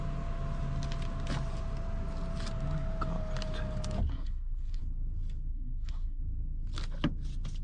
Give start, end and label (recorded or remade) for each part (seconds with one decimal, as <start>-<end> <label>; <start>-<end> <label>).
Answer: 0.0-4.1 recorded; 4.1-4.8 remade; 4.8-5.5 recorded; 5.5-6.2 remade; 6.2-7.6 recorded